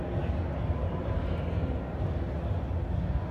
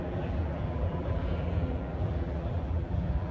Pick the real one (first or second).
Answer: first